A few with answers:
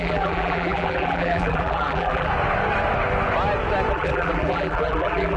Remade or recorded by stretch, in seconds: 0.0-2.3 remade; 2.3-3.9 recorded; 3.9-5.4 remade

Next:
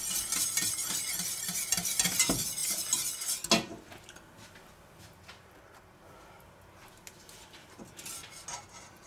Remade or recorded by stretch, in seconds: 0.0-9.1 recorded

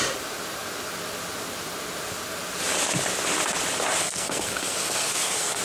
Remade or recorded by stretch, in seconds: 0.0-4.0 recorded; 4.0-5.6 remade

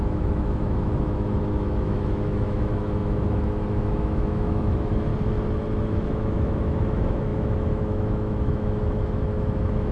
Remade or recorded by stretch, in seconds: 0.0-5.1 remade; 5.1-5.8 recorded; 5.8-9.9 remade

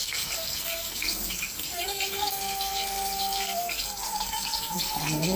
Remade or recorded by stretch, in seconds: 0.0-5.4 remade

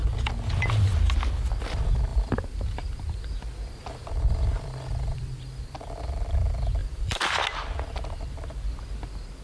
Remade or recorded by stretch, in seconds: 0.0-2.1 recorded; 2.1-5.6 remade; 5.6-6.8 recorded; 6.8-7.4 remade; 7.4-9.4 recorded

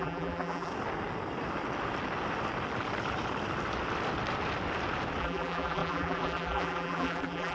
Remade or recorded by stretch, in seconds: 0.0-0.7 remade; 0.7-5.2 recorded; 5.2-7.5 remade